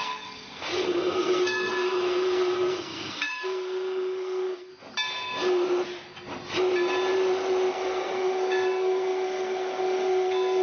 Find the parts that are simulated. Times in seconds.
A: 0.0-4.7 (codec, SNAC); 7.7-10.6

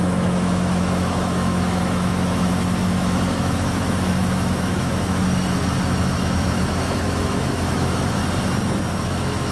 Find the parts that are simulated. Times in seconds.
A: 0.0-5.2 (autoencoder, DAC-VAE); 6.0-8.2; 8.9-9.5

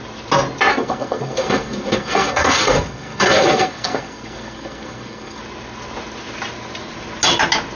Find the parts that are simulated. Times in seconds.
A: 0.7-5.4 (codec, SNAC)

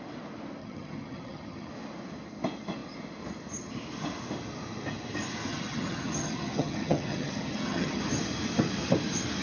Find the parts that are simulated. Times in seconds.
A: 0.6-1.7 (vocoder, HiFi-GAN); 5.5-8.0

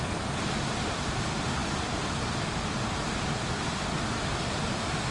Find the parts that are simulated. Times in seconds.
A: none

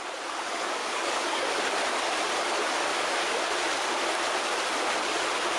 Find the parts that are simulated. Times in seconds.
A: 0.8-1.5 (codec, DAC)

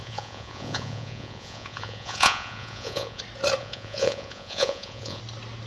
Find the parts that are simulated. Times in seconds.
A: 0.0-3.2 (vocoder, Vocos); 3.6-5.2

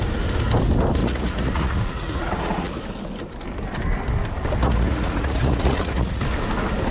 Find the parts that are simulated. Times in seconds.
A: 1.0-2.8 (vocoder, Vocos); 4.6-6.2